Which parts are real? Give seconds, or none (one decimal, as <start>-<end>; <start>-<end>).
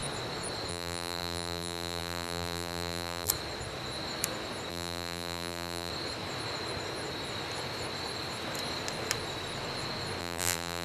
0.0-0.7; 3.3-4.7; 5.9-10.2